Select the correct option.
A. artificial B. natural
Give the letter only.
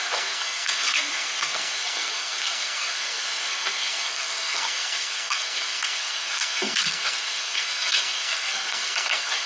A